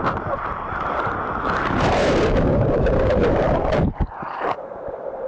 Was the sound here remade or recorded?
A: remade